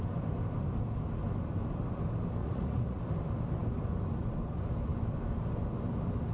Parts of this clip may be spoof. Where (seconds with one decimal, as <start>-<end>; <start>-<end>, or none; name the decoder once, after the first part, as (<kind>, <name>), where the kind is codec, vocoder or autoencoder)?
2.4-3.0 (vocoder, Vocos)

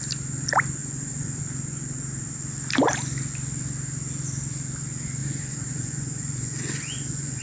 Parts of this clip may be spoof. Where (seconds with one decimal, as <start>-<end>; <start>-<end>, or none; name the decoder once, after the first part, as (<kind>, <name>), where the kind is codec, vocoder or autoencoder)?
0.8-1.4 (vocoder, Vocos); 5.2-7.4

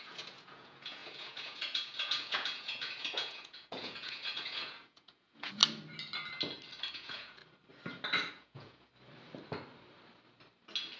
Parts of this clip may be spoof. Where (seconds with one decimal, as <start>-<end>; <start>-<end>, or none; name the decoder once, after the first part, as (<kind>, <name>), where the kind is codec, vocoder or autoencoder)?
0.0-5.6 (vocoder, Vocos); 6.9-7.4; 8.3-8.9

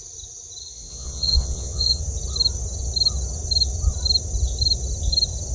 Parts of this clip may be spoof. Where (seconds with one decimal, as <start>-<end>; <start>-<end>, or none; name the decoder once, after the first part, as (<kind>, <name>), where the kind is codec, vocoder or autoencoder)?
0.6-2.0 (vocoder, Vocos)

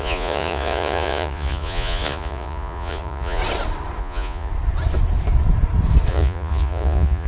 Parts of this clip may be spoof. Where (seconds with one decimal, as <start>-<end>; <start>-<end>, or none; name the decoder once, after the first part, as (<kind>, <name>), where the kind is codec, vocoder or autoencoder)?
0.0-3.4 (vocoder, Vocos); 4.0-4.5; 6.1-7.3

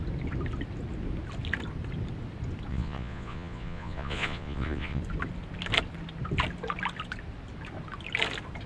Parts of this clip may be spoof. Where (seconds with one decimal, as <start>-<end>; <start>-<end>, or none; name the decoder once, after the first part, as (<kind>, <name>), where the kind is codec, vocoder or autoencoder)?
2.7-5.0 (vocoder, Vocos)